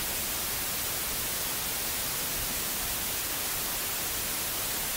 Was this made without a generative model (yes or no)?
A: yes